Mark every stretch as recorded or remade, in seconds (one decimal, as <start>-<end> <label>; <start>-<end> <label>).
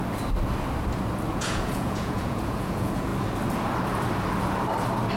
0.0-1.3 recorded; 1.3-3.1 remade; 3.1-5.2 recorded